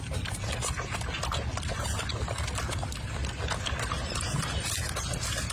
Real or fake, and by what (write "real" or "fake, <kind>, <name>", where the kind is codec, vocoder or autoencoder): real